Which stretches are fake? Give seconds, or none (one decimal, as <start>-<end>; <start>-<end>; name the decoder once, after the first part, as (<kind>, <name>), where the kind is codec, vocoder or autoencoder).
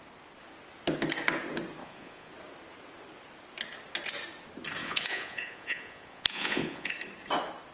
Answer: 1.8-2.3 (vocoder, Vocos); 4.8-6.9